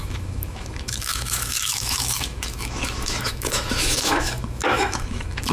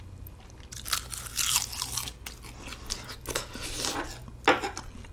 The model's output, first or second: first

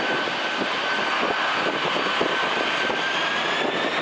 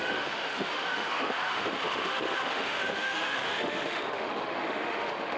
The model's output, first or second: second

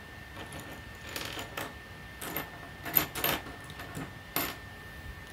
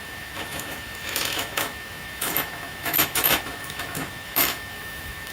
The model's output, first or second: second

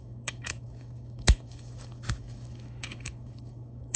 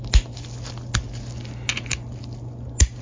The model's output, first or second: first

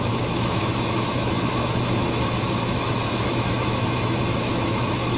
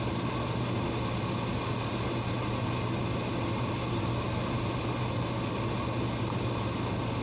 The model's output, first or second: first